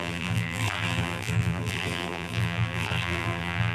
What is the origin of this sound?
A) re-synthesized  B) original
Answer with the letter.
A